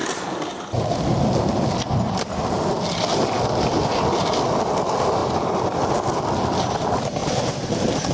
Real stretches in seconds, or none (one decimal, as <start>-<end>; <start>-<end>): 0.0-5.2; 6.2-7.2